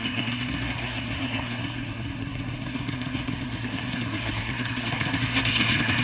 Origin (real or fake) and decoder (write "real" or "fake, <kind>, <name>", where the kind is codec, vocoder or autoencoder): fake, codec, SNAC